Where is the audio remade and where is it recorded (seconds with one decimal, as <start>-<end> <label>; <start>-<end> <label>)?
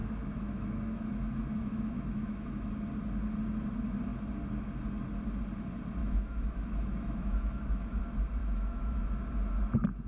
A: 0.0-2.7 remade; 2.7-6.0 recorded; 6.0-8.0 remade; 8.0-8.4 recorded; 8.4-9.1 remade; 9.1-10.1 recorded